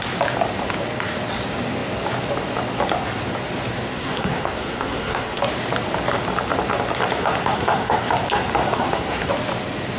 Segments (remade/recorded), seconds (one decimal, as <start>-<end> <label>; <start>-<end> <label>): 0.0-3.9 recorded; 3.9-5.4 remade; 5.4-7.2 recorded; 7.2-8.1 remade; 8.1-8.6 recorded; 8.6-9.3 remade; 9.3-10.0 recorded